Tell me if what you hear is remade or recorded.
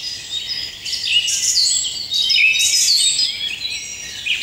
recorded